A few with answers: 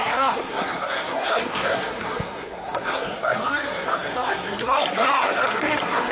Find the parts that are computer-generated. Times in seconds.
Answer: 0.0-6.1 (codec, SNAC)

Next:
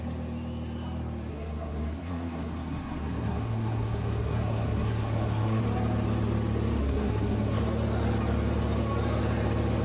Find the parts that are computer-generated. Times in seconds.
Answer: 1.3-5.6 (codec, SNAC); 6.8-7.6

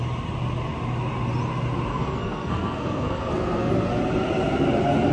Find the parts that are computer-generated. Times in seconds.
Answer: 1.9-3.7 (codec, SNAC)

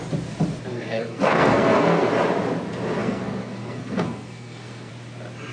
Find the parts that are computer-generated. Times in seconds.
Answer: 0.7-2.1 (codec, SNAC); 3.0-4.9

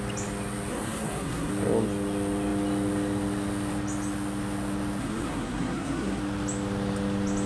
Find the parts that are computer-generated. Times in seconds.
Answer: 0.7-1.5 (codec, SNAC); 5.0-6.2